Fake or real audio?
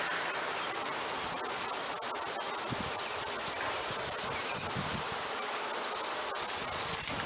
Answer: real